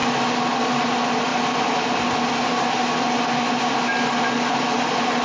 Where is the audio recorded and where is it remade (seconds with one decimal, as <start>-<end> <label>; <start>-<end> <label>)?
0.0-5.2 recorded